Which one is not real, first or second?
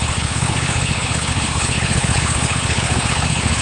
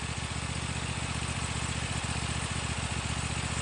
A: first